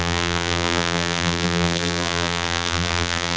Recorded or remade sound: remade